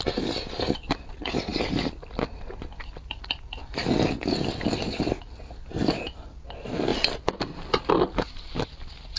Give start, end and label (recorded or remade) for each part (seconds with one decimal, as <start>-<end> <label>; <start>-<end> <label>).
0.0-9.2 recorded